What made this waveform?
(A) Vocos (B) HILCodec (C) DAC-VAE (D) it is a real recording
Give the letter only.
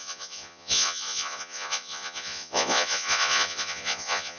A